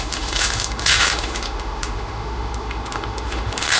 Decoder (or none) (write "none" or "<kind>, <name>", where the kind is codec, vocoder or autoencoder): autoencoder, DAC-VAE